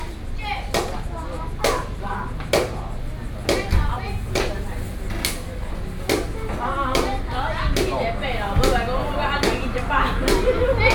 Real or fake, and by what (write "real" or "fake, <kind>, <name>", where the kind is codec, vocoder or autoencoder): real